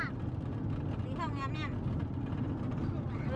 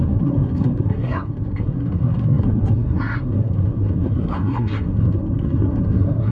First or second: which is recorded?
first